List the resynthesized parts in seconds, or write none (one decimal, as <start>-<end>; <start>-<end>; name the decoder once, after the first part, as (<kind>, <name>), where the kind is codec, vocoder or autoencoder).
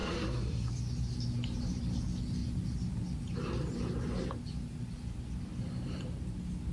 0.0-0.7 (codec, SNAC)